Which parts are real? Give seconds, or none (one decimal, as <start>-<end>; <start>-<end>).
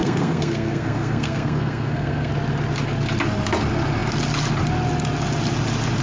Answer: 2.3-6.0